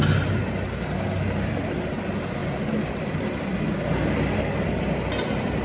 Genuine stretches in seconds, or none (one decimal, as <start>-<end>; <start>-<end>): 0.0-5.6